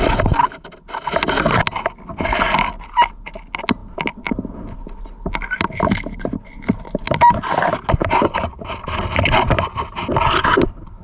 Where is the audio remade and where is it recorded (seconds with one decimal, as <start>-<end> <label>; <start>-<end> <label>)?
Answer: 0.0-8.0 recorded; 8.0-8.6 remade; 8.6-11.0 recorded